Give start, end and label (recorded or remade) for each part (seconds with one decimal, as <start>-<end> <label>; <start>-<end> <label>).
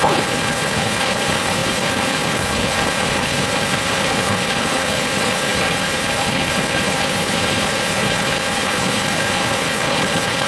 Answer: 0.0-10.5 remade